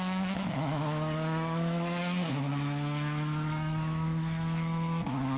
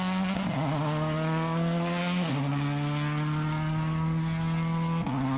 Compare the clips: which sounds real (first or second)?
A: second